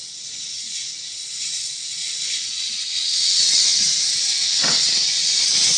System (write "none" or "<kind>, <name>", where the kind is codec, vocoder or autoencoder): vocoder, WaveNeXt